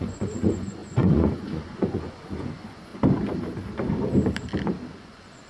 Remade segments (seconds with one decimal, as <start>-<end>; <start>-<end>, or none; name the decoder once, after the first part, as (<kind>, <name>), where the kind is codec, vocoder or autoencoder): 0.0-2.9 (vocoder, Vocos); 5.0-5.5